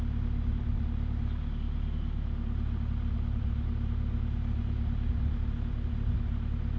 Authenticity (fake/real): real